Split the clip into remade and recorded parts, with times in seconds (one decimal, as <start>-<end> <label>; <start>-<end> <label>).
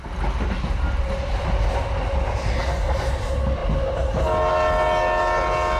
0.0-2.6 recorded; 2.6-3.1 remade; 3.1-5.8 recorded